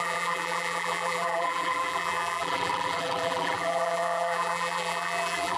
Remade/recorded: remade